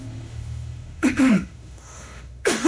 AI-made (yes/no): yes